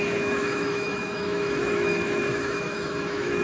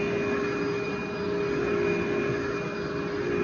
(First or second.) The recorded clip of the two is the second